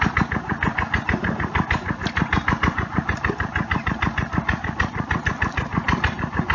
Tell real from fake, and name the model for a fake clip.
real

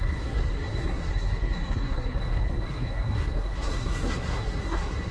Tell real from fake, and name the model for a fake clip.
fake, codec, SNAC